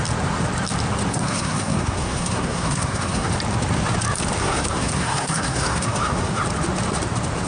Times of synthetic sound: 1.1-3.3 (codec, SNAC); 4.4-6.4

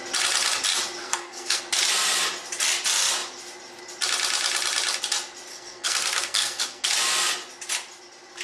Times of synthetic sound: 1.0-1.6 (codec, SNAC); 5.5-6.9

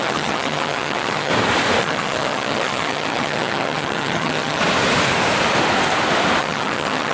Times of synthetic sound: 0.0-1.3 (vocoder, HiFi-GAN); 1.8-4.6; 6.4-7.1

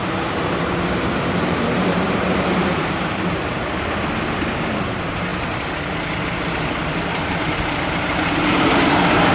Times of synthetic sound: 0.0-9.3 (vocoder, BigVGAN v2)

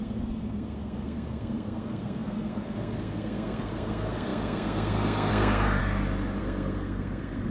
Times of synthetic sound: 0.0-5.8 (codec, SNAC); 6.4-7.5

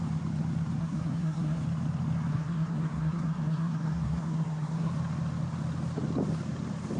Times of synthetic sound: 0.8-1.6 (codec, SNAC); 2.3-4.9

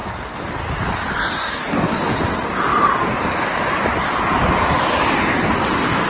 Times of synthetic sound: none